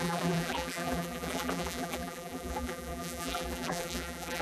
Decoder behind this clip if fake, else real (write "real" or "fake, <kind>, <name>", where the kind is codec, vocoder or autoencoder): fake, vocoder, BigVGAN v2